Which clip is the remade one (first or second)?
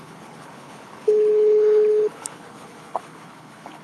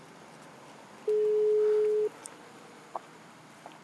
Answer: first